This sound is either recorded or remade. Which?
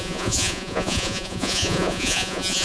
remade